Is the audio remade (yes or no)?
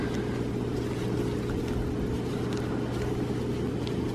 no